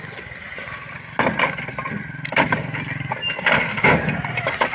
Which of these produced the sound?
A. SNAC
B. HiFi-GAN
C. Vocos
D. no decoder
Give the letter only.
D